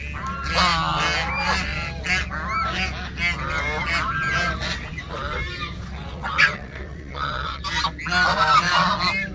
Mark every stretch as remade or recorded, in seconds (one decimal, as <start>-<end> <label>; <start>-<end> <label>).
0.0-5.9 recorded; 5.9-7.6 remade; 7.6-9.3 recorded

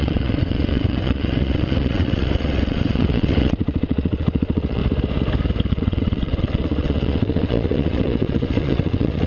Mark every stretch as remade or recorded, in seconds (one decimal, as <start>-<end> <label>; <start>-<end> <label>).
0.0-4.8 remade; 4.8-5.7 recorded; 5.7-9.3 remade

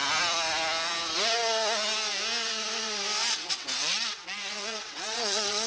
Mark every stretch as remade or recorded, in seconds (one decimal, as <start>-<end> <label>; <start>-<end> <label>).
0.0-3.2 recorded; 3.2-5.7 remade

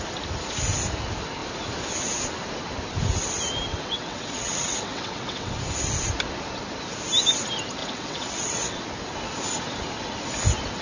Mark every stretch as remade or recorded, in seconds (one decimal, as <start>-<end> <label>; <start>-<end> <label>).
0.0-3.7 recorded; 3.7-5.6 remade; 5.6-7.8 recorded; 7.8-8.8 remade; 8.8-10.8 recorded